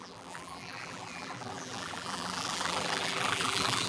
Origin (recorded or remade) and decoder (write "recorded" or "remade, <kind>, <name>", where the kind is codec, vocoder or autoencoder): remade, vocoder, BigVGAN v2